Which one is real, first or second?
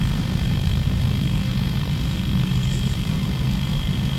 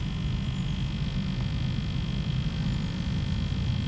second